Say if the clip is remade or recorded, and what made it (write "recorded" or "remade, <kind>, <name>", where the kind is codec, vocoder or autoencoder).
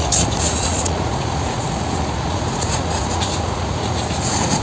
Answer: remade, vocoder, Vocos